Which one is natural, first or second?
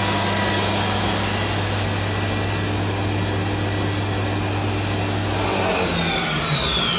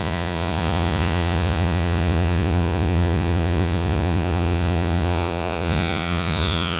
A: first